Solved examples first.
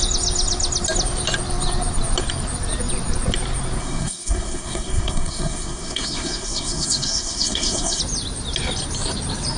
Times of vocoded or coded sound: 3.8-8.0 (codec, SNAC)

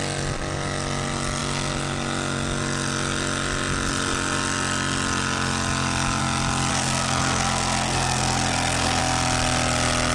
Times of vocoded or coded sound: 6.7-9.0 (codec, SNAC)

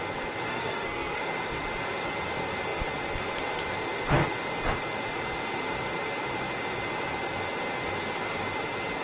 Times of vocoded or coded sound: 0.5-1.2 (codec, SNAC)